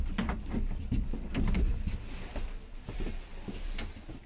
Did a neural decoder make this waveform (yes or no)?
no